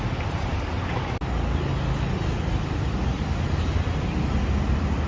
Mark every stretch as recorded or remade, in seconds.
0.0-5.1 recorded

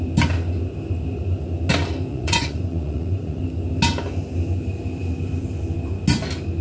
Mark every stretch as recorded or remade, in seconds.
0.0-2.1 recorded; 2.1-3.4 remade; 3.4-6.6 recorded

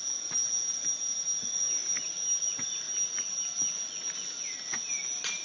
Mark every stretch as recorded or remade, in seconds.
0.0-5.4 recorded

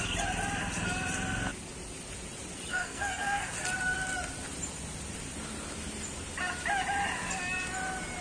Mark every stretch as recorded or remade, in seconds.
0.0-2.7 recorded; 2.7-3.5 remade; 3.5-8.2 recorded